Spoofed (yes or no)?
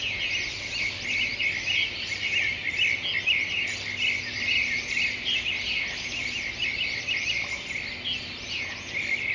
no